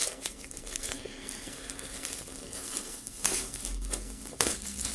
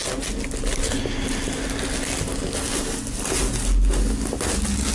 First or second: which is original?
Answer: second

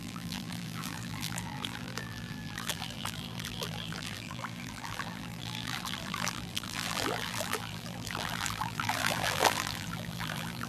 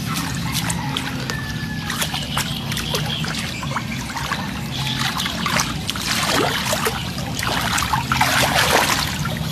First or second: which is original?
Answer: second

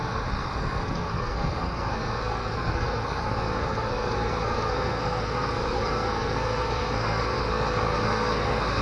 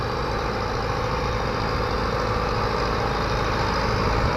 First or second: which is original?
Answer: second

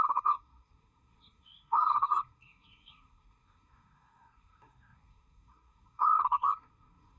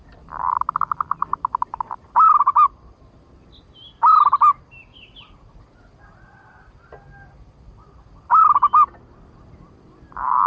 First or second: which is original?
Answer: second